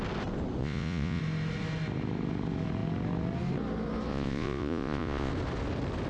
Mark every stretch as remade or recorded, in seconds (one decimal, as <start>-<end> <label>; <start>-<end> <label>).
0.0-0.6 recorded; 0.6-1.2 remade; 1.2-4.1 recorded; 4.1-5.3 remade; 5.3-6.1 recorded